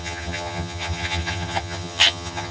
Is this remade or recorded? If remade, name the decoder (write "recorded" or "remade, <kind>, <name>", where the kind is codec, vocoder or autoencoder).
remade, vocoder, HiFi-GAN